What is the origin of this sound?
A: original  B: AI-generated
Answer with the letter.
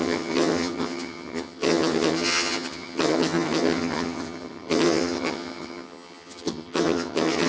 B